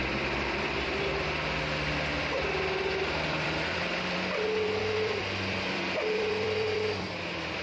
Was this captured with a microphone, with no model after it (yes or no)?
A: no